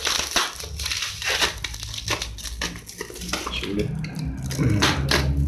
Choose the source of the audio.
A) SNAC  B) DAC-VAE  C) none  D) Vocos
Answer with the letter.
C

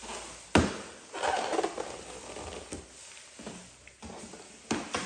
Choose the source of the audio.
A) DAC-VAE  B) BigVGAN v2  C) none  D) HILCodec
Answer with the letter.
C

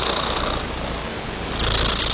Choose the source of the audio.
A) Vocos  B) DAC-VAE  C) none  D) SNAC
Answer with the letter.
C